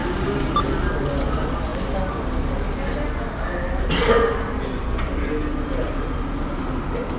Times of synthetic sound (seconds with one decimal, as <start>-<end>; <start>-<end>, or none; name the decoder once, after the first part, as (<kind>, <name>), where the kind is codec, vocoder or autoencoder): none